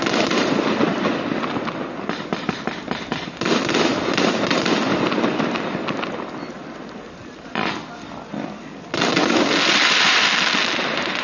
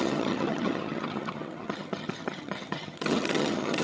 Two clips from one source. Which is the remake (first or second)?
second